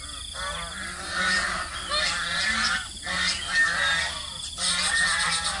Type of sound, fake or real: real